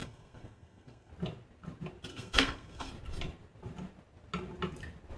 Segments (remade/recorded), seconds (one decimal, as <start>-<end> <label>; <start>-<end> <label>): 0.0-1.1 remade; 1.1-2.1 recorded; 2.1-2.9 remade; 2.9-5.2 recorded